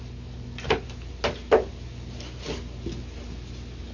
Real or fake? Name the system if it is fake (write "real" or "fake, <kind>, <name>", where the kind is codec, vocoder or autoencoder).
real